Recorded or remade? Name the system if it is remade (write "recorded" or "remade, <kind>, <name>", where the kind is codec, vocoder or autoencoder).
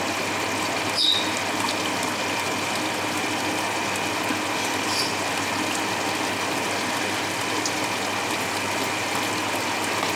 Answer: recorded